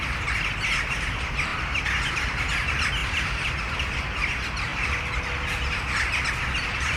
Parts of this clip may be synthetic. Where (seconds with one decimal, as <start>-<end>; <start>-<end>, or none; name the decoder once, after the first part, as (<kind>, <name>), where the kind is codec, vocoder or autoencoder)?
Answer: none